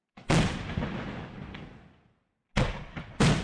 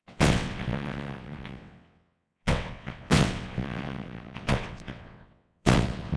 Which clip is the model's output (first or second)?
second